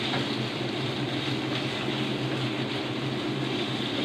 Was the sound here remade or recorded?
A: recorded